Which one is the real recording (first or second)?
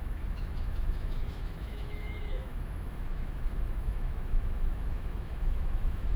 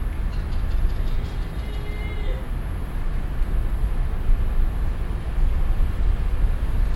second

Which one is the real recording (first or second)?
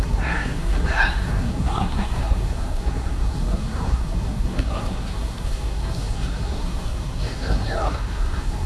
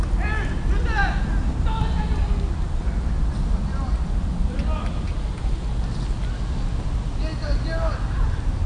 second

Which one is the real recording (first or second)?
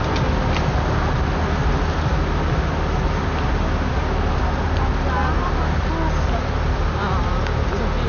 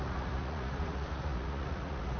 first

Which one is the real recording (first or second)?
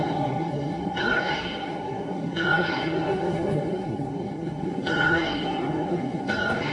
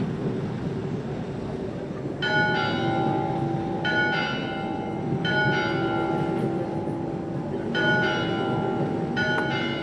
second